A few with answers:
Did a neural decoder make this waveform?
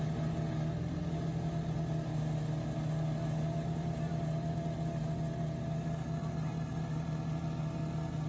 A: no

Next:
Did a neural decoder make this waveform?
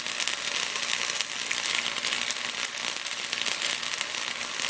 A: no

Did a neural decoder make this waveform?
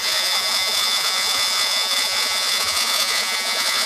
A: yes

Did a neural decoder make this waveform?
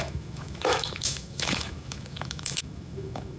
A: yes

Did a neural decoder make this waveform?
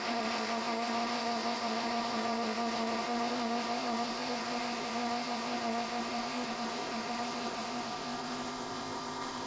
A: yes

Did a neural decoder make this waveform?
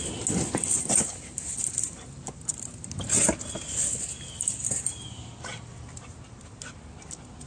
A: no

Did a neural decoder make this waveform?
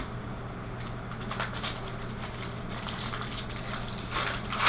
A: no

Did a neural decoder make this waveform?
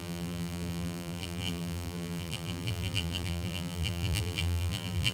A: yes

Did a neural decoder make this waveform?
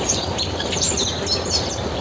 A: yes